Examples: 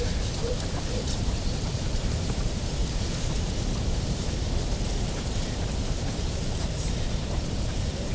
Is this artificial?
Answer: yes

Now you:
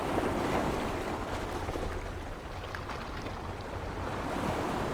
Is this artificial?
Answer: yes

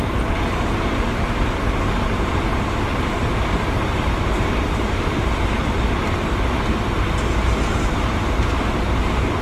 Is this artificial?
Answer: yes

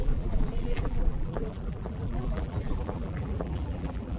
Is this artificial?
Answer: yes